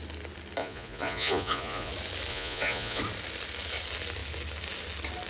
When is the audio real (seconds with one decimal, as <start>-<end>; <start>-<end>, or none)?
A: 0.0-0.6; 1.9-2.3; 3.0-5.3